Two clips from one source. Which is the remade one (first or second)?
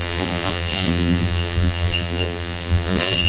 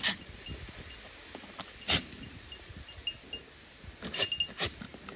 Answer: first